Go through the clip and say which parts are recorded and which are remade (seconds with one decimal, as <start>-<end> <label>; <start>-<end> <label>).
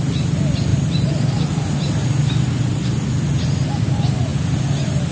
0.0-5.1 recorded